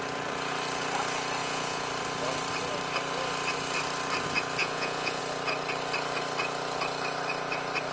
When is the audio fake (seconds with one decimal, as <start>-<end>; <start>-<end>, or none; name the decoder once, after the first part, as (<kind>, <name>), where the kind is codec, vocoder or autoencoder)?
1.4-1.9 (vocoder, Vocos); 4.6-5.2